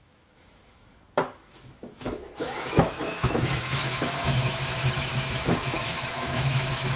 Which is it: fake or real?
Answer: fake